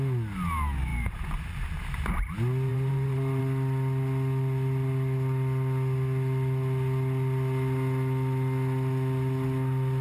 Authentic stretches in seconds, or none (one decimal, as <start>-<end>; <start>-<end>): 0.0-0.9; 1.8-2.7; 3.4-10.0